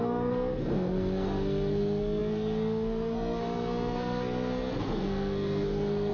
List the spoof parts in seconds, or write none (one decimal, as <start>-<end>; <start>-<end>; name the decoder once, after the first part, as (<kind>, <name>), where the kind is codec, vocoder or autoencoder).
0.0-6.1 (codec, SNAC)